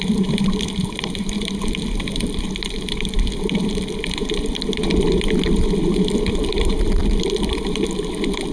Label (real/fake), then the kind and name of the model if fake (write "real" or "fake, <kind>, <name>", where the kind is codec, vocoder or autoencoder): fake, vocoder, BigVGAN v2